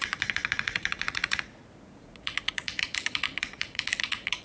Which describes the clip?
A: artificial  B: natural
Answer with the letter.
A